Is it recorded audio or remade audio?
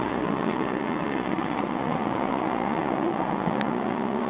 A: remade